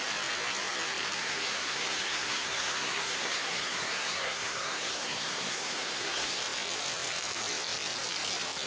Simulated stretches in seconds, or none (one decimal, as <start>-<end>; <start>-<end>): 1.2-6.4